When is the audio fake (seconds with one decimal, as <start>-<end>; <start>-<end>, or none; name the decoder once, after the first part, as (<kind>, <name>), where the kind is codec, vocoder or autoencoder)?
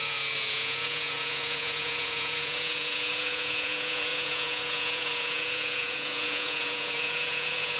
0.0-7.8 (vocoder, Vocos)